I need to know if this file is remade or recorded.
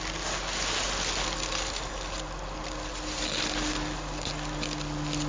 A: recorded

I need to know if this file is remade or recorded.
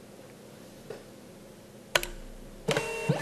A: recorded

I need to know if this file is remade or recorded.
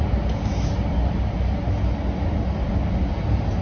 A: recorded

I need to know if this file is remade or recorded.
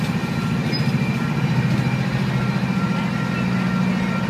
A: recorded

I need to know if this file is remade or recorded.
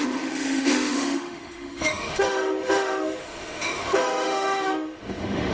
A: remade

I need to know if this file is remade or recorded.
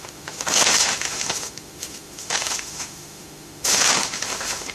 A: remade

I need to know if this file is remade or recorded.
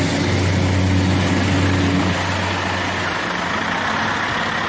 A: recorded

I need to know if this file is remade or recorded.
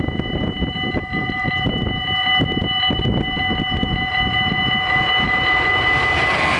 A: recorded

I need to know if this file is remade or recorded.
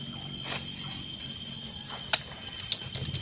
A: recorded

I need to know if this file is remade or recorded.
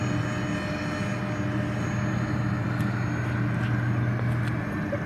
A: recorded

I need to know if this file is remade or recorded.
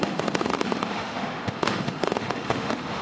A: remade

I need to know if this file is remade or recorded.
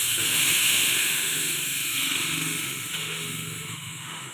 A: remade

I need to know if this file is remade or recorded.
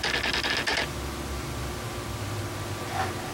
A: recorded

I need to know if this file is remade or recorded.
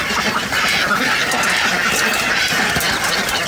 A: recorded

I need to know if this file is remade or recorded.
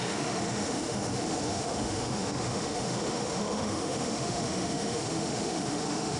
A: remade